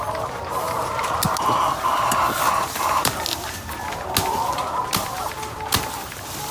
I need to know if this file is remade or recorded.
recorded